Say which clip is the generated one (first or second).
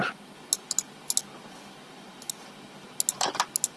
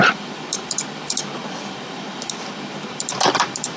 second